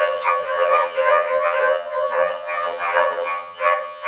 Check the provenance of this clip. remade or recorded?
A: remade